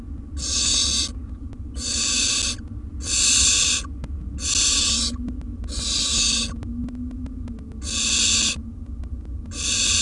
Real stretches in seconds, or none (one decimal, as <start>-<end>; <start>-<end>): 0.0-10.0